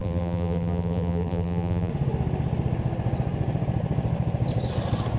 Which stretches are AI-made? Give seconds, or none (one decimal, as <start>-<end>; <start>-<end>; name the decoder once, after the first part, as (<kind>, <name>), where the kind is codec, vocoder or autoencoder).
0.0-1.9 (vocoder, BigVGAN v2)